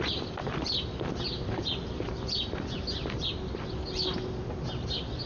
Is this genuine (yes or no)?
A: yes